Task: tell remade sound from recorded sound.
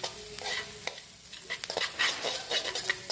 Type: recorded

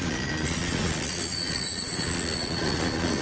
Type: remade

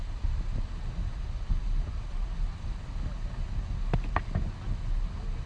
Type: recorded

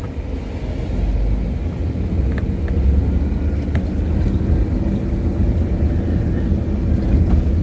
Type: recorded